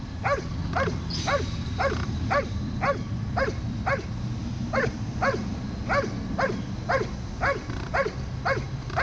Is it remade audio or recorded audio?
recorded